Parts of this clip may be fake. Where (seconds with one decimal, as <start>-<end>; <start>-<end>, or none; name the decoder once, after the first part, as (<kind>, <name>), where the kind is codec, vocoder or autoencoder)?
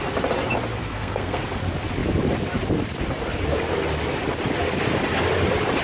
0.8-1.4 (codec, SNAC)